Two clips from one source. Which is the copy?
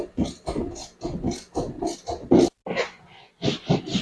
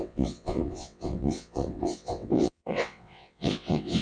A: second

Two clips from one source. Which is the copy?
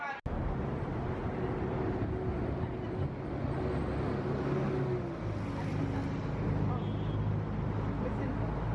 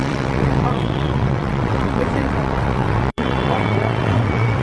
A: second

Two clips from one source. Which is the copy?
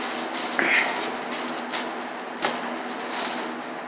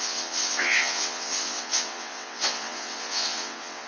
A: second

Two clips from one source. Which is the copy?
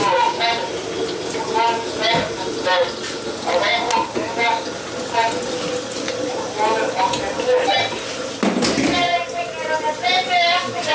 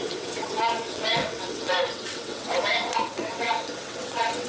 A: second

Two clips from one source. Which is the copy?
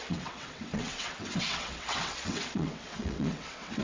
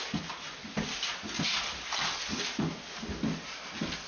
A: first